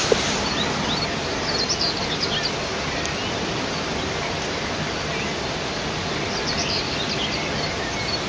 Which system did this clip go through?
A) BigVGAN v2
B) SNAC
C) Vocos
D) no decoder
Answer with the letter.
D